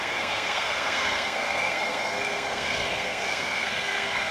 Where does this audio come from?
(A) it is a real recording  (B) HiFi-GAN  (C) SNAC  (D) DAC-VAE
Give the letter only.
C